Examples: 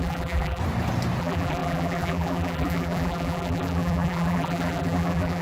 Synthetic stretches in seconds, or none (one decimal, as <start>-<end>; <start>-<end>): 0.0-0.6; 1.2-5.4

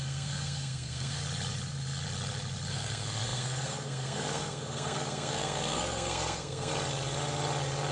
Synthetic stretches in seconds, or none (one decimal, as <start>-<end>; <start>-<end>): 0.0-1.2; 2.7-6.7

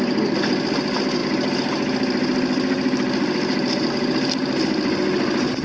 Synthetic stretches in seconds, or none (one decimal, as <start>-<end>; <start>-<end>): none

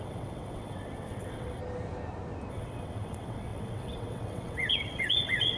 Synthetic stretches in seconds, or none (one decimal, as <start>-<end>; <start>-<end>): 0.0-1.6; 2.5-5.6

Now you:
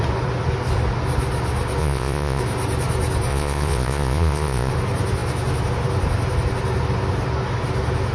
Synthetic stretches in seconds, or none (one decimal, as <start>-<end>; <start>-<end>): 1.8-2.4; 3.3-4.7

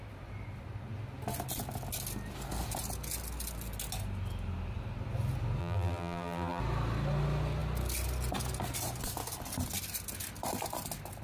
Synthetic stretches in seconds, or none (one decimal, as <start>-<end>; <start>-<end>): 5.6-6.6

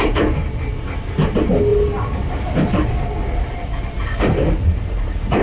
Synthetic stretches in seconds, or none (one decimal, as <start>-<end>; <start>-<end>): none

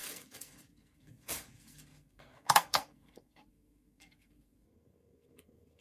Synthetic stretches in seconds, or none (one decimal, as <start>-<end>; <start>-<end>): 0.0-5.8